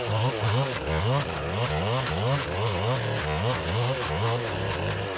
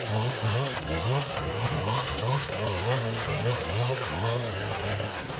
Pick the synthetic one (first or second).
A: second